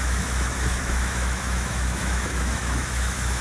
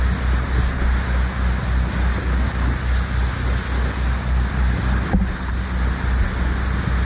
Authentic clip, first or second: second